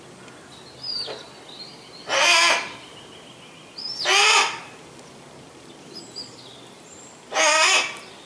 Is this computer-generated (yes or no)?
no